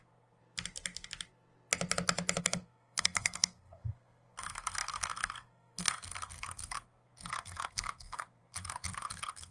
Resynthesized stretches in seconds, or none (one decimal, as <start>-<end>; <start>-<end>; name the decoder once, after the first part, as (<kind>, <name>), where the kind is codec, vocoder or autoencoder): 0.0-0.4 (codec, SNAC); 2.4-9.5